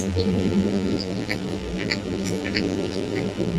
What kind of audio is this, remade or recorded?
remade